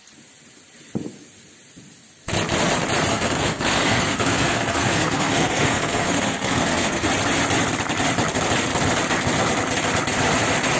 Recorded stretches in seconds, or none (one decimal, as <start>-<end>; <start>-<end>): 0.0-3.1; 7.1-10.8